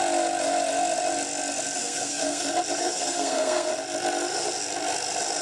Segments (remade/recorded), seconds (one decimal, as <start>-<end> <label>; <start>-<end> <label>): 0.0-1.8 recorded; 1.8-2.4 remade; 2.4-2.8 recorded; 2.8-3.7 remade; 3.7-5.4 recorded

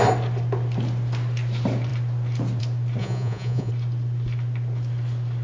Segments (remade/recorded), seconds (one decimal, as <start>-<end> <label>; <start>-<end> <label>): 0.0-3.0 recorded; 3.0-3.7 remade; 3.7-5.4 recorded

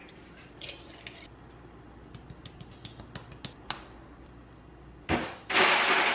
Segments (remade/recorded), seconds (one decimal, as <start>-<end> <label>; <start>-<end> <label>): 0.0-6.1 recorded